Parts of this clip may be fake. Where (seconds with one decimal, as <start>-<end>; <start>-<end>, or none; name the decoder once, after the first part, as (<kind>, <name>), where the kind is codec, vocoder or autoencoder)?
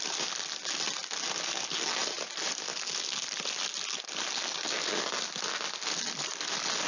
none